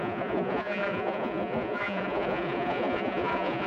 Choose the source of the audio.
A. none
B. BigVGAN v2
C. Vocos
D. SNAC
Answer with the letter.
C